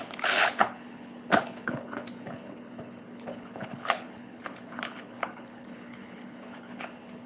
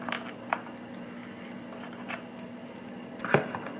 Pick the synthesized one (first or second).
first